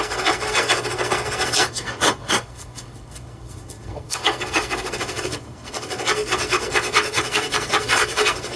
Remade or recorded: remade